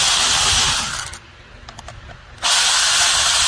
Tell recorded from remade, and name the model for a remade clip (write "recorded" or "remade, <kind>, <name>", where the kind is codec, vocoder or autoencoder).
recorded